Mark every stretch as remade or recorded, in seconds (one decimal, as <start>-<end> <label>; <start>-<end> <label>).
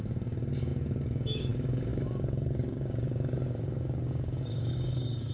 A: 0.0-5.3 remade